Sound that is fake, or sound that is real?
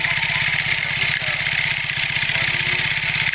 real